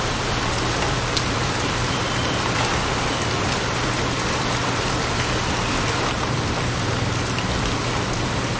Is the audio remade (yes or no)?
yes